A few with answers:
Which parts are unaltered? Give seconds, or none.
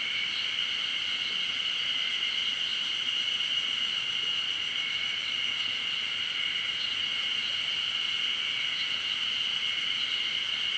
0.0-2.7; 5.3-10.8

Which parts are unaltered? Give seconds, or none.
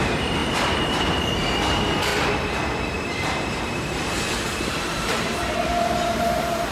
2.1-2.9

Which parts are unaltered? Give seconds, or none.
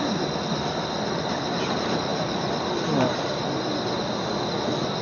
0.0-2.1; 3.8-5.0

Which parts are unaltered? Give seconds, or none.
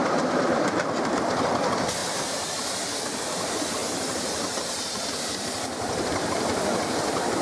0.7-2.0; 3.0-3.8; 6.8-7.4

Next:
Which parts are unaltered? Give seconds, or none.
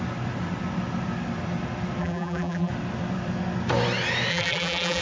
0.0-2.0; 2.7-4.3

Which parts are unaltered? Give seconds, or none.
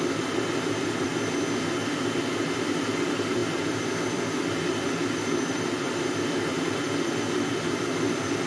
1.1-2.3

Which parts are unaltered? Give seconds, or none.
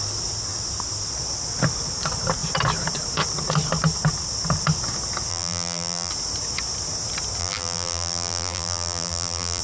0.0-5.3; 6.1-7.4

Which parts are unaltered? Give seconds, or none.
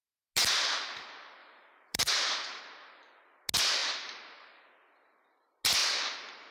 0.0-1.4; 2.6-3.8; 4.6-6.5